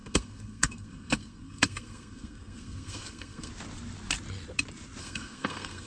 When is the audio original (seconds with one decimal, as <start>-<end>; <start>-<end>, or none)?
3.5-5.0